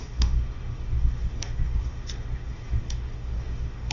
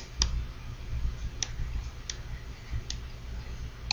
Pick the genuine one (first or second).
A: second